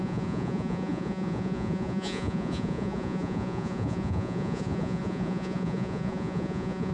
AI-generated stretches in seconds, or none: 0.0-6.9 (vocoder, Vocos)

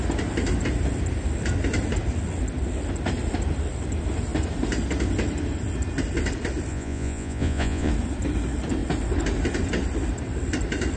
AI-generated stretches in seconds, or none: 6.7-7.9 (vocoder, Vocos)

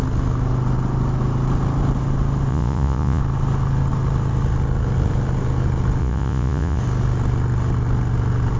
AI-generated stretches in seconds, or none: 2.5-3.2 (vocoder, Vocos); 6.0-6.8

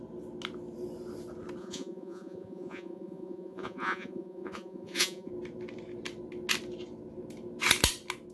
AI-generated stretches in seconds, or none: 1.6-5.3 (vocoder, Vocos)

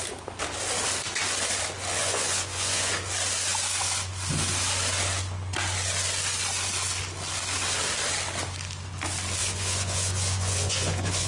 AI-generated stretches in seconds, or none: 2.0-2.9 (vocoder, Vocos); 9.4-11.3

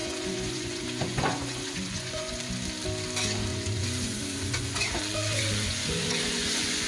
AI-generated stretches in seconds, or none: 0.0-2.5 (vocoder, Vocos); 3.5-6.9